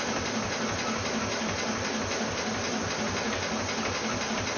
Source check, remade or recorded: recorded